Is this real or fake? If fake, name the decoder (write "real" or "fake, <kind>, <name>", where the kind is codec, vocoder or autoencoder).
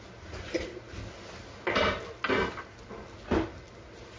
real